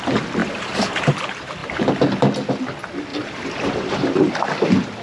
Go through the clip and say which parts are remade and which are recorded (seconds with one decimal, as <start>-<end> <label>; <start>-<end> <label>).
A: 0.0-0.4 recorded; 0.4-1.1 remade; 1.1-3.1 recorded; 3.1-4.3 remade; 4.3-5.0 recorded